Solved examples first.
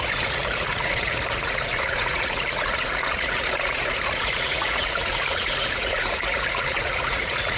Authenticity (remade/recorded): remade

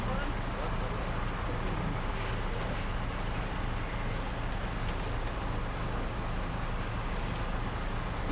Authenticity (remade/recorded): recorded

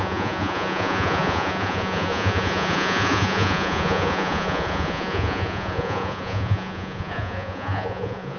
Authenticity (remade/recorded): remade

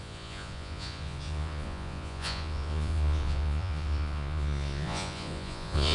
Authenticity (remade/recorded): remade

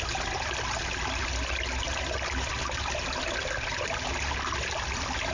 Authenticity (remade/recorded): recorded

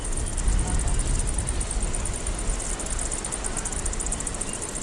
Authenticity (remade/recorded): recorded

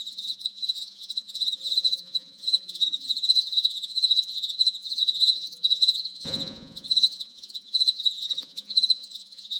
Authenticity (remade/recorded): remade